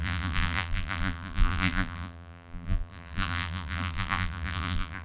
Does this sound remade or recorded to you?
remade